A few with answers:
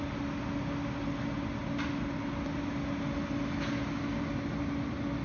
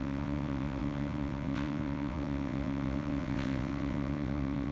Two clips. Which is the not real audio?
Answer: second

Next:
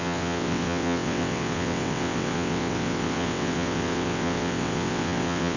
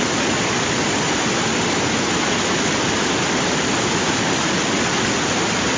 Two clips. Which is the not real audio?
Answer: first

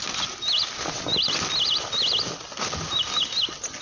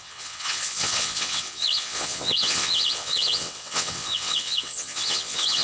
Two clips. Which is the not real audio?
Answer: second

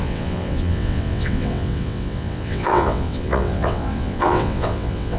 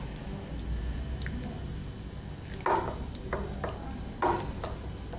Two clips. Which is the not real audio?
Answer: first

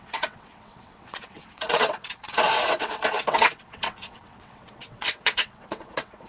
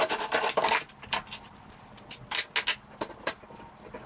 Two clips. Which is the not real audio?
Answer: first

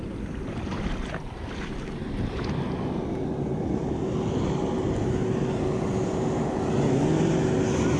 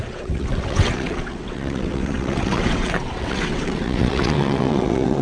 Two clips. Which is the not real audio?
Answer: second